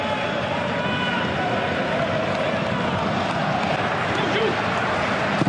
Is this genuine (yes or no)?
yes